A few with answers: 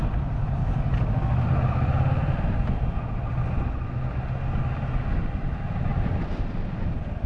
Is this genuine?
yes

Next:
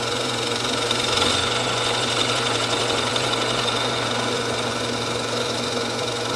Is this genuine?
no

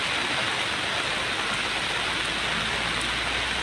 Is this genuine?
yes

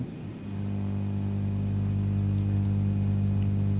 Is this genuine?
yes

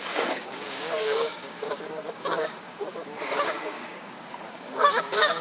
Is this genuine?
no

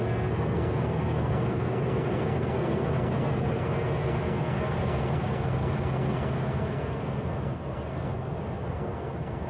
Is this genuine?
no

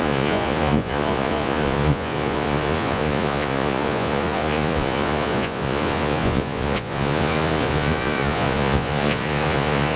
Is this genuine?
no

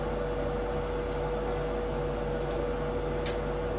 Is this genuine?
yes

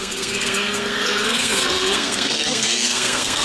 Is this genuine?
no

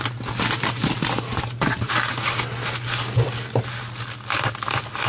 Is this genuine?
yes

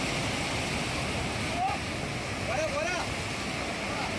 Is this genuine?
yes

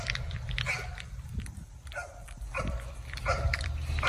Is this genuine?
no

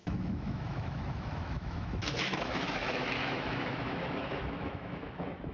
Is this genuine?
no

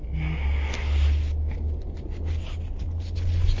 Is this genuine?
yes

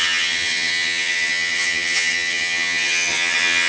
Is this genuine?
no